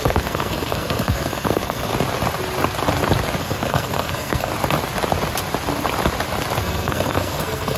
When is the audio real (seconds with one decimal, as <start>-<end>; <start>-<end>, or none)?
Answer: 1.9-3.4; 4.5-6.6